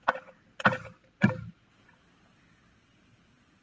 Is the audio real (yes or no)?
yes